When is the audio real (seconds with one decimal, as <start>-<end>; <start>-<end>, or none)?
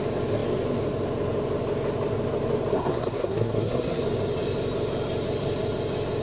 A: 0.0-2.7; 4.0-6.2